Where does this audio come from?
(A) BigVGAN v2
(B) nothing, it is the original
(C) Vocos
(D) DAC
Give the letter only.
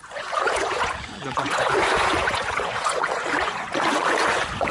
C